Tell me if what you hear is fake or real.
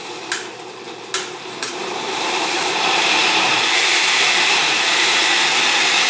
fake